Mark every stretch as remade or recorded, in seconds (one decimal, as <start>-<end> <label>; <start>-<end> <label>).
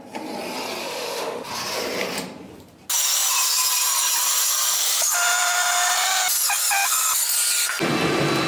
0.0-0.8 recorded; 0.8-1.5 remade; 1.5-8.5 recorded